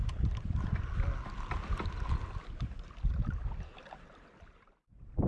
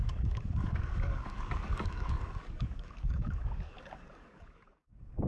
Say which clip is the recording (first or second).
first